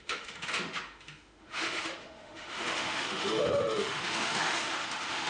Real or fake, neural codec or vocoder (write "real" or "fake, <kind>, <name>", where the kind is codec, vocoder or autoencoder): fake, autoencoder, DAC-VAE